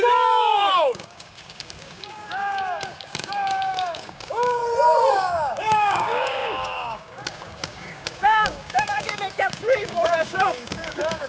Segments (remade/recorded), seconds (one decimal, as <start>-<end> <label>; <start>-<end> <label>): 0.0-4.6 remade; 4.6-5.1 recorded; 5.1-11.3 remade